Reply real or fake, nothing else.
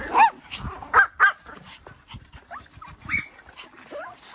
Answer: real